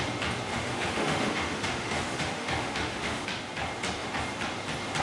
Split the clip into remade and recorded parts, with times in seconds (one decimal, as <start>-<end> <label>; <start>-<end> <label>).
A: 0.0-0.5 recorded; 0.5-3.2 remade; 3.2-5.0 recorded